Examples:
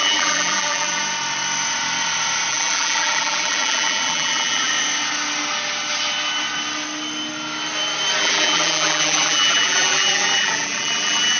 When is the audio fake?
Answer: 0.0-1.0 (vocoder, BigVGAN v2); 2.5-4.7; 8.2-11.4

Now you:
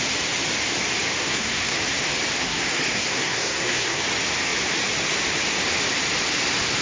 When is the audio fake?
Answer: 1.2-1.8 (codec, SNAC); 2.4-4.0

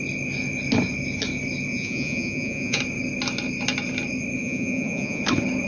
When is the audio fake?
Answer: 1.7-2.8 (vocoder, Vocos); 4.4-5.2

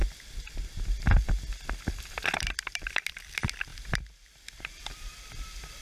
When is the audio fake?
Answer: 2.0-3.7 (vocoder, BigVGAN v2); 4.7-5.8